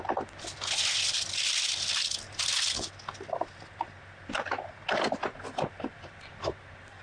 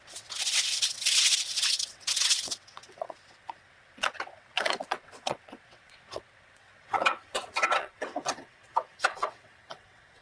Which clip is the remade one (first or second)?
second